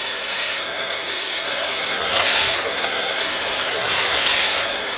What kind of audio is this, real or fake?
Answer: fake